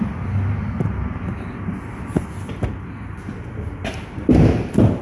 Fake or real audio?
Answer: real